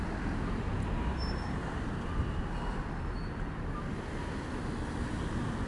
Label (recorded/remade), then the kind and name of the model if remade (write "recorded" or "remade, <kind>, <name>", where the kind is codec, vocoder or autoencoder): recorded